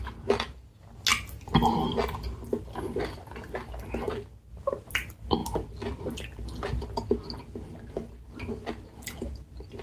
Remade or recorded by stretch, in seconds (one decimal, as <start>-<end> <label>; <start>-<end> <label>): 0.0-9.8 recorded